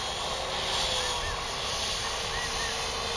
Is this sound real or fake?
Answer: real